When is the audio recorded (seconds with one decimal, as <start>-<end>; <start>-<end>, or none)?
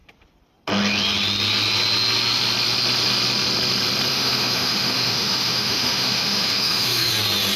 0.0-4.1; 7.1-7.6